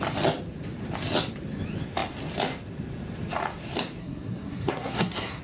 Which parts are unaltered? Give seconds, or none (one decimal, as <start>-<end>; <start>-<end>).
0.0-4.0